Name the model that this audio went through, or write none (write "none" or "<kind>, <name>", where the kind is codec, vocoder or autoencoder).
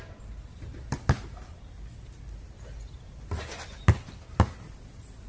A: none